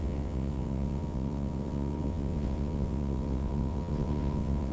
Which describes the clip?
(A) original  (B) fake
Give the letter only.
B